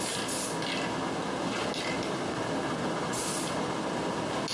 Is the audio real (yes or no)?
yes